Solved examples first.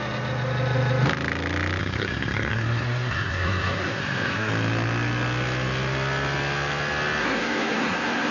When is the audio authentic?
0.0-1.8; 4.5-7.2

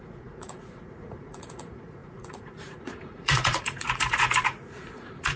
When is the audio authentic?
none